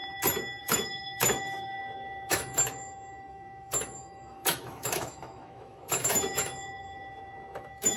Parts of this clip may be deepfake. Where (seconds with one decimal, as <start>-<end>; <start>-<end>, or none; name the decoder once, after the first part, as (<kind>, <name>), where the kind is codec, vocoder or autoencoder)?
0.6-8.0 (autoencoder, DAC-VAE)